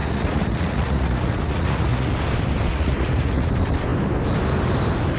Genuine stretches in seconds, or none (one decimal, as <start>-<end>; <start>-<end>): 2.1-2.7; 3.5-5.2